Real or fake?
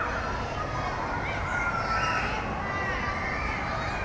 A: real